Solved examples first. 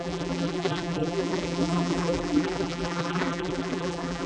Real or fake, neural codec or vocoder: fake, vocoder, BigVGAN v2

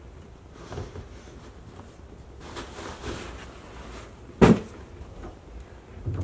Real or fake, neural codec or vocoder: real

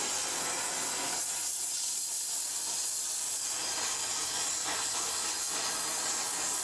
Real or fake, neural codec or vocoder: real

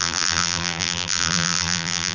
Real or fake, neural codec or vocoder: fake, vocoder, BigVGAN v2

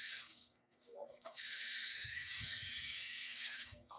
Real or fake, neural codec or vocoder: fake, codec, SNAC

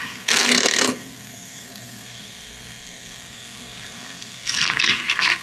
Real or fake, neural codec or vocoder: fake, codec, SNAC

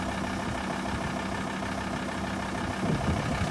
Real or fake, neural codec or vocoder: real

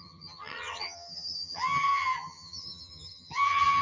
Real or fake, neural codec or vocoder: fake, vocoder, HiFi-GAN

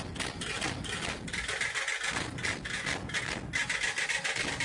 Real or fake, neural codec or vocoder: real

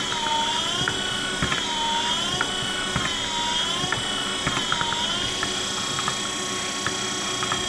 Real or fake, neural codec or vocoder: real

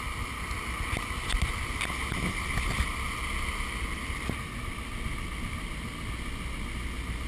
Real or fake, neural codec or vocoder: real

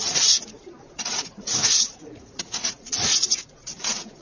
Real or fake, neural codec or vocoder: fake, vocoder, Vocos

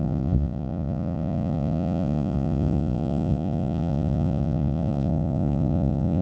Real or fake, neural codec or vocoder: fake, vocoder, Vocos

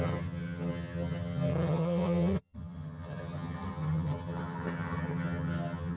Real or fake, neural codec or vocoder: fake, vocoder, HiFi-GAN